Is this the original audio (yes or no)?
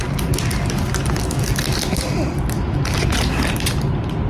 yes